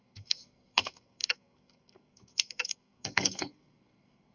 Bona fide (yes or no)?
no